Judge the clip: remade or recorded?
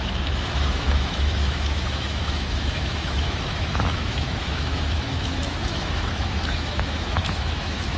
remade